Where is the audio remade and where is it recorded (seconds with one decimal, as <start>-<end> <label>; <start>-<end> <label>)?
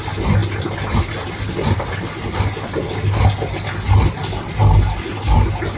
0.0-5.8 recorded